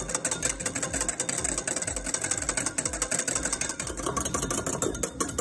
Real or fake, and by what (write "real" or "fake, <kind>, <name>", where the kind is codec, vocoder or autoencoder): real